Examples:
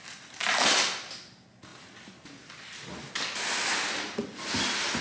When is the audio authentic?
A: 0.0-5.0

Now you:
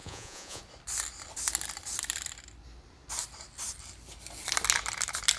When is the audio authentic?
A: 0.6-5.4

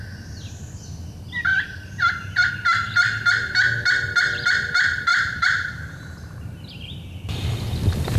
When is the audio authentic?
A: 0.0-1.5; 2.5-5.1; 6.6-8.2

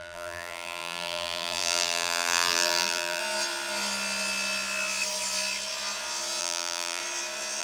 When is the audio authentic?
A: 3.2-6.4; 7.0-7.6

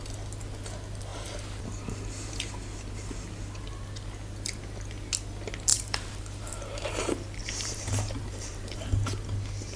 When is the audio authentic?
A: 0.0-5.7; 6.9-7.4; 8.8-9.8

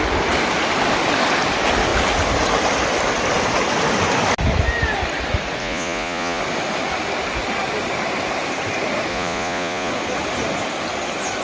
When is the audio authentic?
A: 0.0-5.6; 6.4-9.1; 9.9-11.4

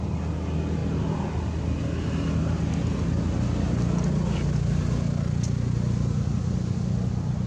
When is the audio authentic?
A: 0.0-7.5